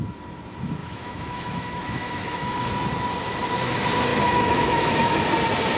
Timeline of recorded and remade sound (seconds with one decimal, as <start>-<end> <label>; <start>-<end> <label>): 0.0-0.8 recorded; 0.8-2.7 remade; 2.7-4.1 recorded; 4.1-5.2 remade; 5.2-5.8 recorded

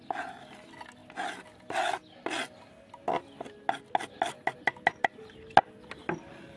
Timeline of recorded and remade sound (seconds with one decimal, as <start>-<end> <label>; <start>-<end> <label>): 0.0-6.6 recorded

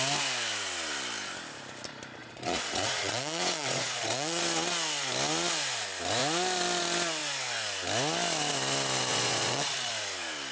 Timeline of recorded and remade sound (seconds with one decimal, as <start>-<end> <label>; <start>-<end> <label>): 0.0-2.2 recorded; 2.2-4.4 remade; 4.4-9.1 recorded; 9.1-9.9 remade; 9.9-10.5 recorded

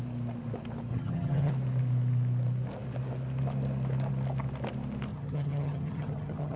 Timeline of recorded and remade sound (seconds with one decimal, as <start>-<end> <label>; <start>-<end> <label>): 0.0-0.9 recorded; 0.9-1.5 remade; 1.5-5.1 recorded; 5.1-6.6 remade

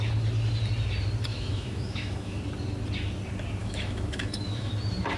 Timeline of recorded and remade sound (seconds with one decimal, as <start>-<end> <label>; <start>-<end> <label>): 0.0-1.3 recorded; 1.3-2.4 remade; 2.4-3.6 recorded; 3.6-4.7 remade; 4.7-5.2 recorded